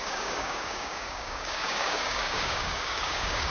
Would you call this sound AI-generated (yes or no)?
yes